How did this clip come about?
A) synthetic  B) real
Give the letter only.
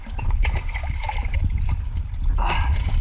A